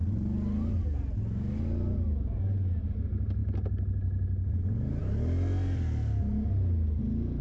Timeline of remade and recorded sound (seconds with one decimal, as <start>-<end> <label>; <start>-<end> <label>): 0.0-7.4 recorded